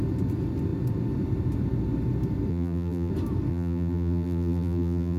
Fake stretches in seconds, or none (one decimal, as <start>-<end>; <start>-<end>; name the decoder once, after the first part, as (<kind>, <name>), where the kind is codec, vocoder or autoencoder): 2.5-3.1 (vocoder, BigVGAN v2); 3.5-5.2